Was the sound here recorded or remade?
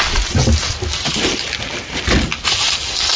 recorded